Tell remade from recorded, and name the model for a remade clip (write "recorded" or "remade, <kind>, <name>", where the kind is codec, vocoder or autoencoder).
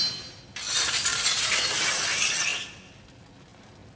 recorded